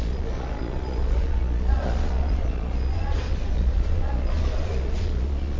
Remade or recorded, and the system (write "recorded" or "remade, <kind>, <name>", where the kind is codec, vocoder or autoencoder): remade, vocoder, Vocos